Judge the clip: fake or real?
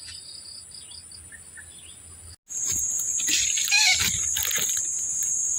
real